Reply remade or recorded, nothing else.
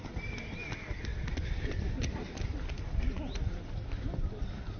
recorded